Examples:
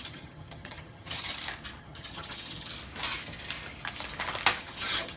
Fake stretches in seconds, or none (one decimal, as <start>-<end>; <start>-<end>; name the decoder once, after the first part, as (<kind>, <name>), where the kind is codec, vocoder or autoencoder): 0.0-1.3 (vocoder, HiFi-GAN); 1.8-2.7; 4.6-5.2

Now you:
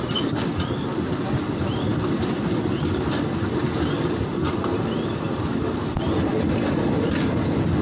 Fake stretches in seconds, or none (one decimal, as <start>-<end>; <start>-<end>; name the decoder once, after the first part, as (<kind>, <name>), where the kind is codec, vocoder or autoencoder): none

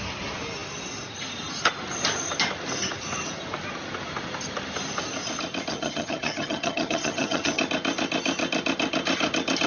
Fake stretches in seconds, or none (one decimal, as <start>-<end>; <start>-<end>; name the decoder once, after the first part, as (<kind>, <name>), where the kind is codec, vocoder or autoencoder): 5.7-7.6 (vocoder, HiFi-GAN)

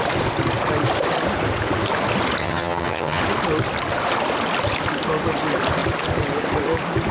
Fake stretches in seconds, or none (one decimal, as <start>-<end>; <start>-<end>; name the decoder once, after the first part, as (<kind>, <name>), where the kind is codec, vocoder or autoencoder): 2.4-3.2 (vocoder, HiFi-GAN)

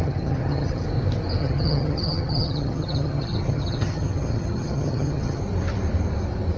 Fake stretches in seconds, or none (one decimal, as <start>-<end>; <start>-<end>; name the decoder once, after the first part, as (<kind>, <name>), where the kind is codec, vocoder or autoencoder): 0.0-0.8 (vocoder, HiFi-GAN); 1.4-5.4

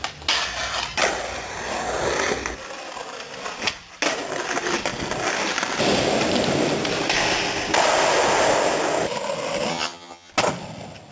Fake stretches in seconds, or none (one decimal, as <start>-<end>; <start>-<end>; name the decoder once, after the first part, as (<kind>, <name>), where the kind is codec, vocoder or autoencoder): 9.7-10.3 (vocoder, HiFi-GAN)

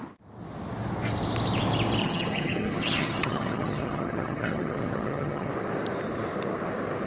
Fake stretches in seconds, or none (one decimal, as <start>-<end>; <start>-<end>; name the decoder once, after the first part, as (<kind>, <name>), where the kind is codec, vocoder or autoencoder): 2.0-5.5 (vocoder, HiFi-GAN)

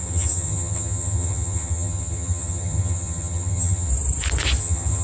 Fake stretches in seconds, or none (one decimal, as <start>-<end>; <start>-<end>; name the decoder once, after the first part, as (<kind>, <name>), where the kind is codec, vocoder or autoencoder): 0.0-3.9 (vocoder, HiFi-GAN); 4.6-5.0